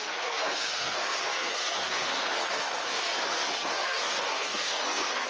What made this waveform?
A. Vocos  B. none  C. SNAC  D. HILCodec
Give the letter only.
C